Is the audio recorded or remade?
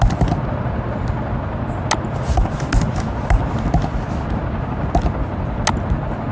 recorded